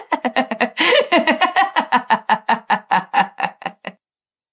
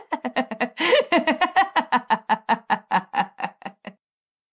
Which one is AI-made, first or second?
first